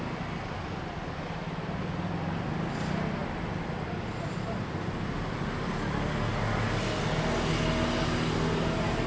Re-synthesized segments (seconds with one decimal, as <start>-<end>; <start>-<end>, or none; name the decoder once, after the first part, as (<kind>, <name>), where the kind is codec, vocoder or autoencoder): none